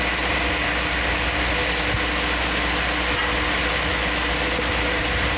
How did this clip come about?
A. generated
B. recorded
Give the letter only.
B